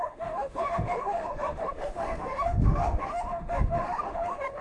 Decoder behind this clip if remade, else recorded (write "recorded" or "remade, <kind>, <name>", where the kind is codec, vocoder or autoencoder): remade, autoencoder, DAC-VAE